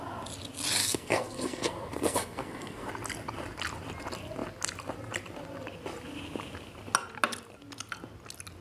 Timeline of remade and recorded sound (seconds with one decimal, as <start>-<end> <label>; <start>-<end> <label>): 0.0-0.8 recorded; 0.8-2.9 remade; 2.9-8.6 recorded